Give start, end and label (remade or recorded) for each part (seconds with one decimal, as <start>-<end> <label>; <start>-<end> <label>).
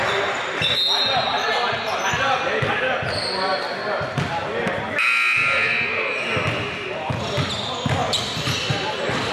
0.0-8.0 recorded; 8.0-8.9 remade; 8.9-9.3 recorded